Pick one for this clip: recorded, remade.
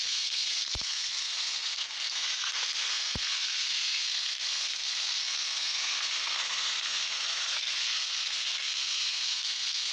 remade